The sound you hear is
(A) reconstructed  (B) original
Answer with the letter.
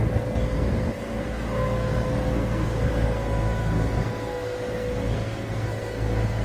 A